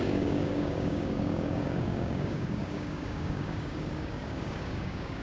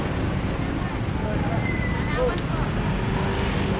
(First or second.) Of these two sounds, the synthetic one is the first